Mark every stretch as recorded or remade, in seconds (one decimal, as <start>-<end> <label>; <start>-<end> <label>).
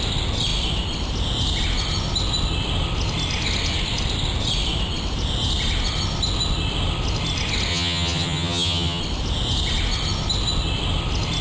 0.0-7.7 recorded; 7.7-9.0 remade; 9.0-11.4 recorded